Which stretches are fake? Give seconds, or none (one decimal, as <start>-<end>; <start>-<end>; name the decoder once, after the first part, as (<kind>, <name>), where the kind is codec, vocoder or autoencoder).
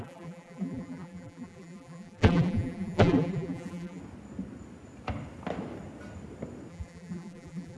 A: 0.0-4.0 (vocoder, BigVGAN v2); 6.7-7.8